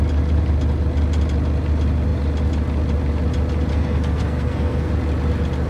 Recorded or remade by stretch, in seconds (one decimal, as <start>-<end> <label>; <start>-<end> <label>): 0.0-3.7 recorded; 3.7-4.9 remade; 4.9-5.7 recorded